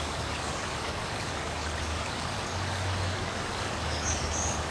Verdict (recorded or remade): remade